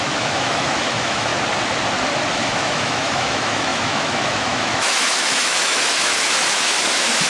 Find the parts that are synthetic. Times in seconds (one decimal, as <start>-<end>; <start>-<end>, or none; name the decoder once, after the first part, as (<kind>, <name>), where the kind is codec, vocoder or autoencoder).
0.0-1.3 (autoencoder, DAC-VAE); 2.3-7.3